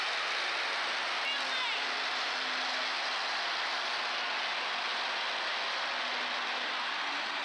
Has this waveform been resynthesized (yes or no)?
no